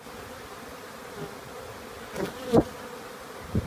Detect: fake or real real